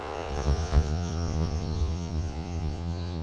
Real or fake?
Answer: fake